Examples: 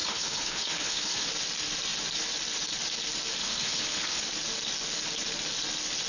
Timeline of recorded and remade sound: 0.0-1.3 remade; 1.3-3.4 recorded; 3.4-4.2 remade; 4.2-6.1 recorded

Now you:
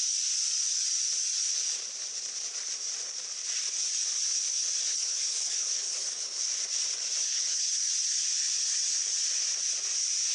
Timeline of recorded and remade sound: 0.0-4.9 recorded; 4.9-6.4 remade; 6.4-7.2 recorded; 7.2-7.9 remade; 7.9-10.3 recorded

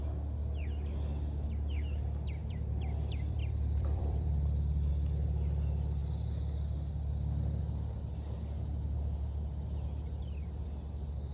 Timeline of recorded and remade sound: 0.0-2.4 recorded; 2.4-4.9 remade; 4.9-11.3 recorded

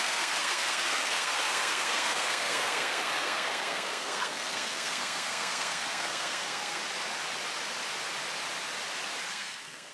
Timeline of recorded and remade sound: 0.0-6.8 remade; 6.8-9.3 recorded; 9.3-9.9 remade